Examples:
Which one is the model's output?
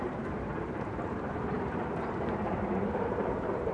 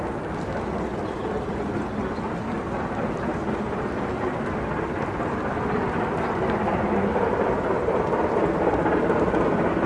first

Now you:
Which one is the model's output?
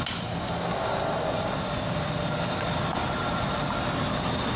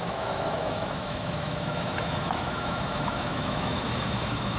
second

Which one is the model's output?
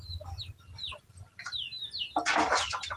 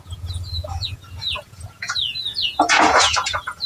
second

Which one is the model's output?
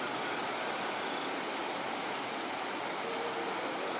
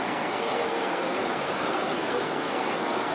second